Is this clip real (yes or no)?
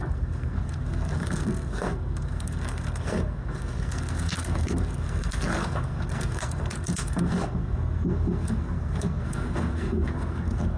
no